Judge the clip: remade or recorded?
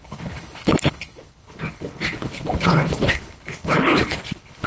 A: remade